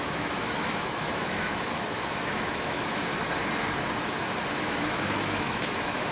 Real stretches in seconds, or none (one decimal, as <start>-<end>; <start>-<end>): 3.1-4.5